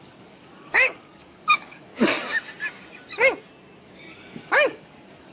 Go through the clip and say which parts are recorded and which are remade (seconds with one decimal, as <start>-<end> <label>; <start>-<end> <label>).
0.0-1.9 remade; 1.9-3.8 recorded; 3.8-5.3 remade